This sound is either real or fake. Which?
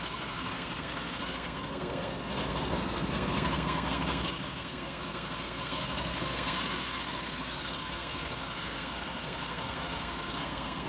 fake